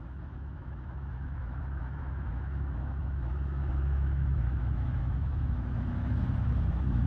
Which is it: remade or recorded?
remade